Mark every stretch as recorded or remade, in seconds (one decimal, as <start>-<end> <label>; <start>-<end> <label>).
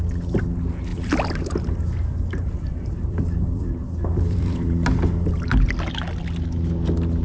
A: 0.0-0.9 recorded; 0.9-4.7 remade; 4.7-7.2 recorded